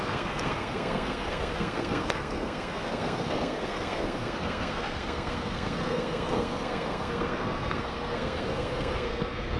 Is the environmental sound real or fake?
fake